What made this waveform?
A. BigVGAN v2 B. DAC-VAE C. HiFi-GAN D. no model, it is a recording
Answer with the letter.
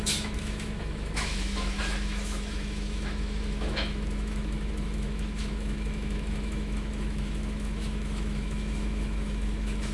B